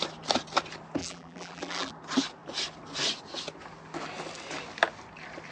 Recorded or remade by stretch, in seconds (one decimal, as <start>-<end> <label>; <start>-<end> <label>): 0.0-1.0 recorded; 1.0-1.9 remade; 1.9-5.5 recorded